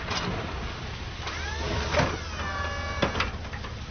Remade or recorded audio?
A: recorded